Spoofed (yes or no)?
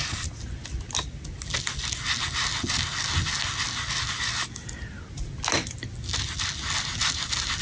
no